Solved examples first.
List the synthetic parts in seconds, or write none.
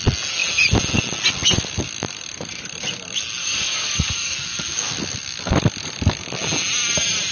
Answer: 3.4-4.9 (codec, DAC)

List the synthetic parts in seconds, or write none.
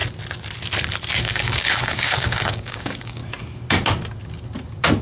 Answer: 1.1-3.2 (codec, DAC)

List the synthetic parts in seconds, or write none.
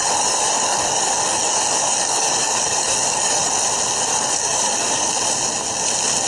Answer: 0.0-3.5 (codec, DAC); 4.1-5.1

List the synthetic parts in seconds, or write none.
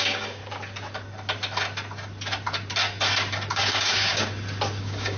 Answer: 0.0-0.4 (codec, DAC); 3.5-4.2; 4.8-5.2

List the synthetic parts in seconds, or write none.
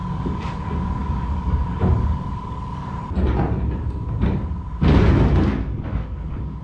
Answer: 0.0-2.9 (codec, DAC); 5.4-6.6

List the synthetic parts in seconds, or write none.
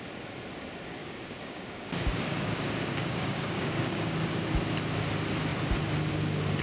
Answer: 1.0-4.5 (codec, DAC)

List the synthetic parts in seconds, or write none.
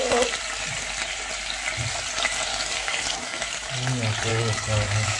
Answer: 2.5-3.7 (codec, DAC); 4.3-5.2